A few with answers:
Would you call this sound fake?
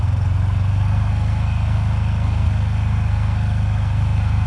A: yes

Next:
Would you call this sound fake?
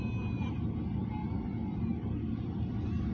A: no